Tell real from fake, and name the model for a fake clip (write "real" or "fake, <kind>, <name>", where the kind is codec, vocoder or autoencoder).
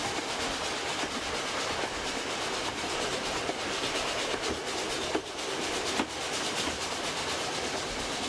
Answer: real